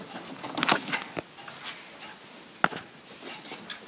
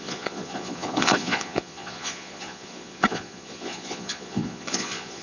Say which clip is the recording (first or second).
first